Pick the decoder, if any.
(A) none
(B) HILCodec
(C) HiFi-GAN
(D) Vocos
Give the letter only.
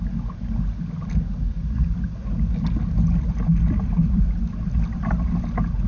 A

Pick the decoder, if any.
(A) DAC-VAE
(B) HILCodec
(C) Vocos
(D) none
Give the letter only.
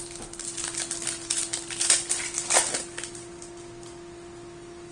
D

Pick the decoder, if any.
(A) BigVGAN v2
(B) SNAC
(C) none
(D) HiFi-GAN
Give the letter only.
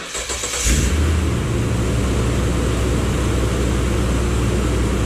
C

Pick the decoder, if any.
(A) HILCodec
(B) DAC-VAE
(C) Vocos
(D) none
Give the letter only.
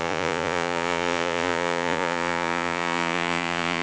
C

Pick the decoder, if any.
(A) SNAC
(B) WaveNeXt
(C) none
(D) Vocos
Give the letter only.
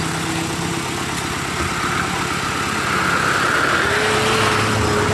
C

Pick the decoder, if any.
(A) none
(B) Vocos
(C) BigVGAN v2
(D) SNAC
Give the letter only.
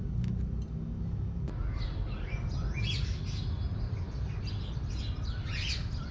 A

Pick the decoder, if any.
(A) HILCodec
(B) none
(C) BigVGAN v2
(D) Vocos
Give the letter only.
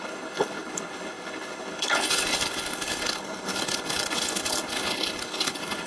A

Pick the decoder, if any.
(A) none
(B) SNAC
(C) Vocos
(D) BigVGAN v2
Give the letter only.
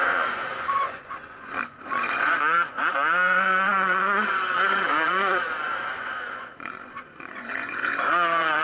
C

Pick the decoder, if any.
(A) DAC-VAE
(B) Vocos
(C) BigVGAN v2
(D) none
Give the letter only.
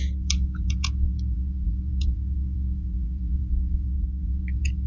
B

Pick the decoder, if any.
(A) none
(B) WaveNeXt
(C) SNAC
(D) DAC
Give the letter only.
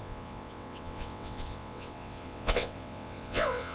B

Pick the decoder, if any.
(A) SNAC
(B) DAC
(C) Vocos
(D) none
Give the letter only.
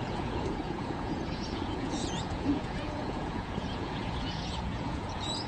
C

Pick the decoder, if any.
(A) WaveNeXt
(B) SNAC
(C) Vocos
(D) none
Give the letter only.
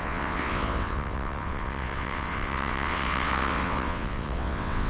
A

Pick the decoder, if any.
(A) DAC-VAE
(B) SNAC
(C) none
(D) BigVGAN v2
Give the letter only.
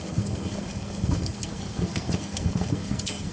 B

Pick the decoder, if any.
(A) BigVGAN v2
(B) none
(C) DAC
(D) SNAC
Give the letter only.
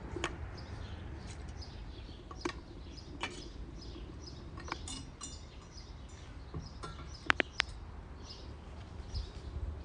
B